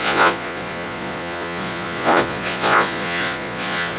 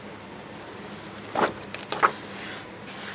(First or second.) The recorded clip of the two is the second